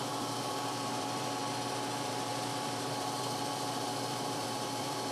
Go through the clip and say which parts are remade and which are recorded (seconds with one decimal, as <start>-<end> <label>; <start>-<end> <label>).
0.0-1.4 remade; 1.4-1.9 recorded; 1.9-5.1 remade